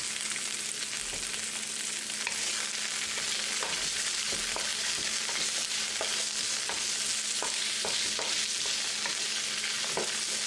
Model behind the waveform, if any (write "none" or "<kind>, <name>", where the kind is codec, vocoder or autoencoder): none